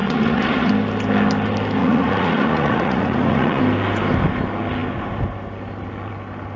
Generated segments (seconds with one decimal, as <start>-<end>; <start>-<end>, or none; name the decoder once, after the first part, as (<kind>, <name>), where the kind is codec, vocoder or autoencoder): 0.0-0.7 (vocoder, Vocos); 1.8-3.6

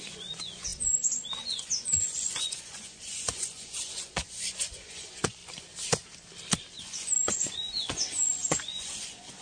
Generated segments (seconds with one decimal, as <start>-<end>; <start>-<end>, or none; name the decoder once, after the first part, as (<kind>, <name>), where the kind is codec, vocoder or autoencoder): 0.0-5.4 (vocoder, Vocos); 6.8-9.4

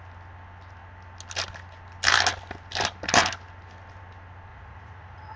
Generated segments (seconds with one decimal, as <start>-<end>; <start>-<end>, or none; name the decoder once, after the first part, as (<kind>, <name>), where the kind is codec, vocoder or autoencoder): 4.5-5.4 (vocoder, Vocos)

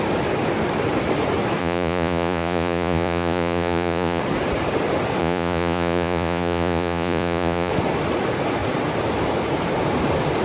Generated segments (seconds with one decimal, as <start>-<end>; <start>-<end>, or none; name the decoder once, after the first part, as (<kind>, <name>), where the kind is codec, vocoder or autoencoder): 1.6-4.2 (vocoder, Vocos); 5.2-7.7